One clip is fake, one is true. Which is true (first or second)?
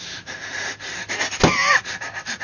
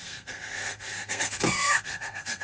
first